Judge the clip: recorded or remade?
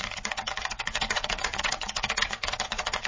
remade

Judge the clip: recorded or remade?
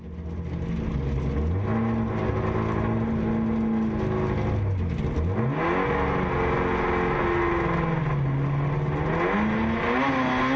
recorded